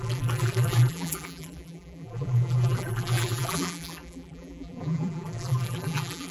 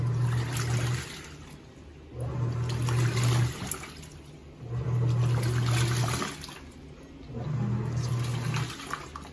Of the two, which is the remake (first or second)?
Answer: first